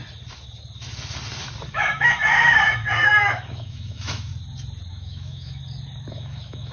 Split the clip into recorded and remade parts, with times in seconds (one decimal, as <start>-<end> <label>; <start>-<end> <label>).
0.0-1.7 recorded; 1.7-4.3 remade; 4.3-4.9 recorded; 4.9-5.6 remade; 5.6-6.1 recorded; 6.1-6.7 remade